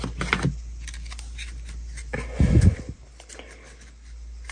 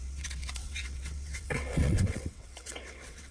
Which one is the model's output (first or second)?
second